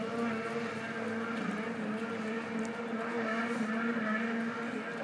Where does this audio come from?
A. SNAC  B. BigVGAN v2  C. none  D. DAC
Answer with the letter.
C